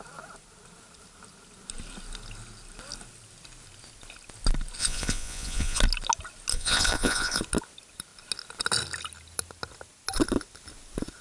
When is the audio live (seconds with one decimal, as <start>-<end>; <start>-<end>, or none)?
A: 0.0-4.8; 5.8-6.5; 7.4-11.2